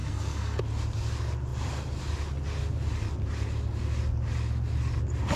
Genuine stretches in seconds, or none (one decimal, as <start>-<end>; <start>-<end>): 0.6-5.4